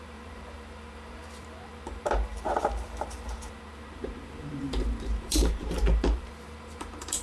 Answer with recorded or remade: remade